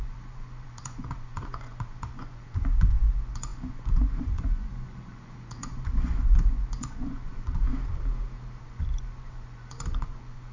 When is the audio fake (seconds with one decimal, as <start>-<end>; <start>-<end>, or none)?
0.0-7.7; 8.6-10.5